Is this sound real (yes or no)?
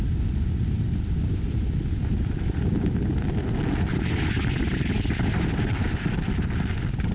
yes